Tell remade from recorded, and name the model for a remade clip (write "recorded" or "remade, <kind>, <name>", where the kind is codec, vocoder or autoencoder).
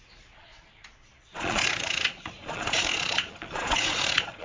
remade, vocoder, Vocos